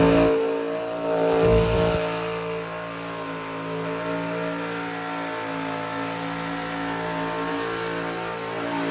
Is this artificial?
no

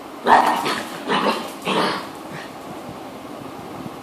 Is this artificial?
no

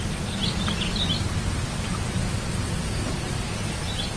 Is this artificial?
no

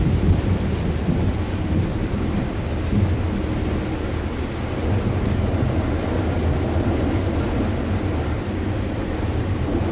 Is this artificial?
no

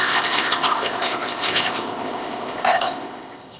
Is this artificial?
yes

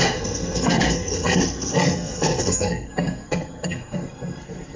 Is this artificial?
yes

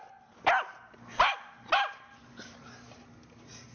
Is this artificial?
no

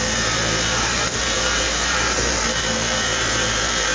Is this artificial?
yes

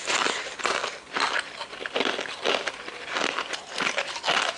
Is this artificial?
yes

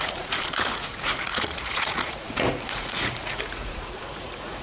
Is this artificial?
yes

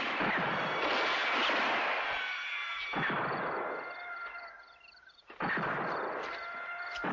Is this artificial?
no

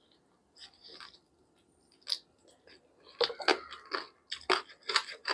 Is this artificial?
no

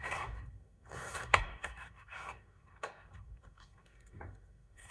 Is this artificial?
yes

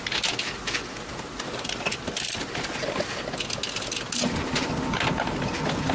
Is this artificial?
no